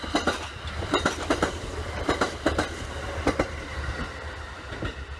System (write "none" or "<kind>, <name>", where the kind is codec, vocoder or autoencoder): vocoder, BigVGAN v2